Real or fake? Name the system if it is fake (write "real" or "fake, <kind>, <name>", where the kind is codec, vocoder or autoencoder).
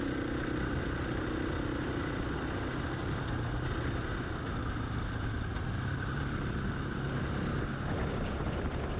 real